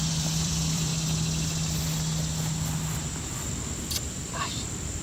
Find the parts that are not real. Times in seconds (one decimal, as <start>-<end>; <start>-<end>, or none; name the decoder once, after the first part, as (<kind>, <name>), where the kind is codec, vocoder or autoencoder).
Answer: 0.0-0.9 (vocoder, BigVGAN v2); 3.9-5.0